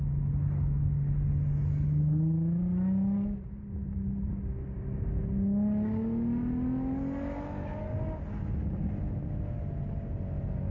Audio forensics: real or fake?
real